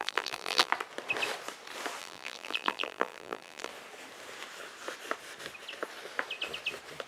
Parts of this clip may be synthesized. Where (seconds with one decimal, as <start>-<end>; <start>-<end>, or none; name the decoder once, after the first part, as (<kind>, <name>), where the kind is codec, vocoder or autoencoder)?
0.0-0.7 (vocoder, BigVGAN v2); 2.0-3.7